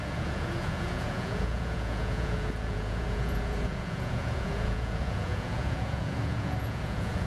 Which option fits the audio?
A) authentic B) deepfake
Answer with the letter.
B